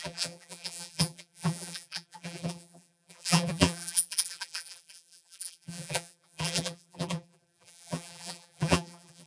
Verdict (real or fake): fake